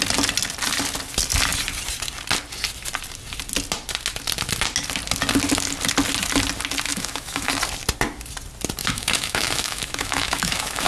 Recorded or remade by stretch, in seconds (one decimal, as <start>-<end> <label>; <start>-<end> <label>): 0.0-6.9 recorded; 6.9-7.5 remade; 7.5-8.8 recorded; 8.8-10.9 remade